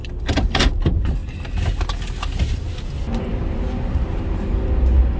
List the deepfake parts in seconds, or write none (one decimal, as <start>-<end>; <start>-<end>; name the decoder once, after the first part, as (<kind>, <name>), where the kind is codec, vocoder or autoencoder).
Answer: none